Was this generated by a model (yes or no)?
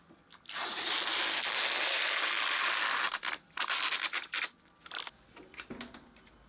no